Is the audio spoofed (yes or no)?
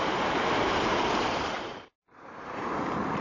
yes